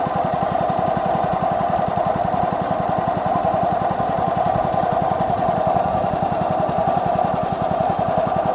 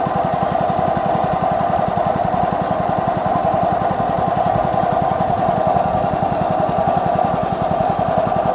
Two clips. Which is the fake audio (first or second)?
first